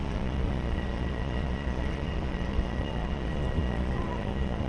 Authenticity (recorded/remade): remade